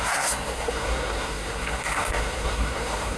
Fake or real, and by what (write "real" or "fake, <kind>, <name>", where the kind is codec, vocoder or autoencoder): fake, codec, SNAC